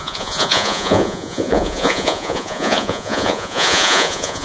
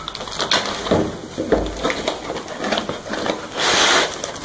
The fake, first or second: first